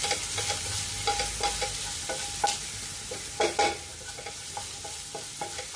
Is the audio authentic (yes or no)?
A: yes